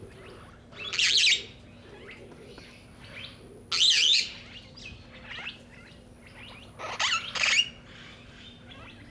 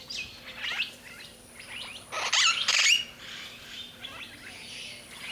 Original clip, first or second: first